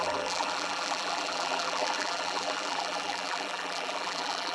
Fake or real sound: fake